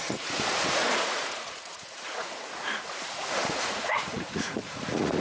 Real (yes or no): no